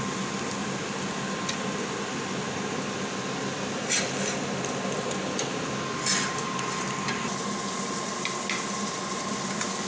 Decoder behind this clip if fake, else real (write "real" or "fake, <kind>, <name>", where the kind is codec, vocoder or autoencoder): real